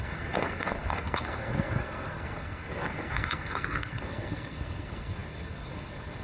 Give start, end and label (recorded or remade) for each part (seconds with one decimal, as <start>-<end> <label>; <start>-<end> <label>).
0.0-6.2 remade

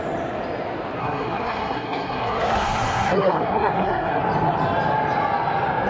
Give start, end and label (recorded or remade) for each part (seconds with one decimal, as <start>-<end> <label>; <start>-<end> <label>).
0.0-1.0 recorded; 1.0-4.2 remade; 4.2-5.9 recorded